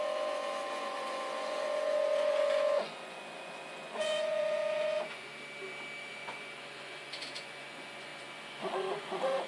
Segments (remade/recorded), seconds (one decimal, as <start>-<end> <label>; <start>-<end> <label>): 0.0-5.3 remade; 5.3-6.0 recorded; 6.0-9.5 remade